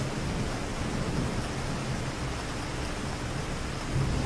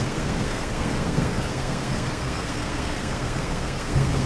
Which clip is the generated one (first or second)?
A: second